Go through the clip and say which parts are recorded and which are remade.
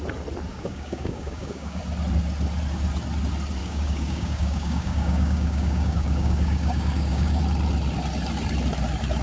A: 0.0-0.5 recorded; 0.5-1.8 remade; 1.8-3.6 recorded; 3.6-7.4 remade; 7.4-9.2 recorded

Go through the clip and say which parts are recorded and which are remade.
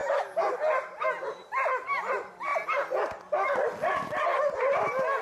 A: 0.0-1.1 remade; 1.1-5.2 recorded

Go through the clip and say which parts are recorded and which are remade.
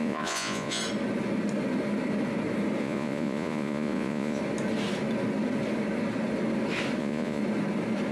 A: 0.0-0.8 remade; 0.8-2.8 recorded; 2.8-4.4 remade; 4.4-7.0 recorded; 7.0-7.4 remade; 7.4-8.1 recorded